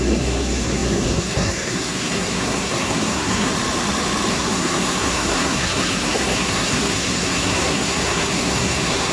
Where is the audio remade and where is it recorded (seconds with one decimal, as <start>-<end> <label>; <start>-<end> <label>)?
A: 0.0-3.5 remade; 3.5-4.3 recorded; 4.3-9.1 remade